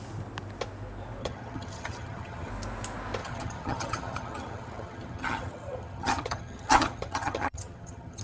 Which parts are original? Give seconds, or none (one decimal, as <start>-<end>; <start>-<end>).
0.0-1.2; 2.5-3.2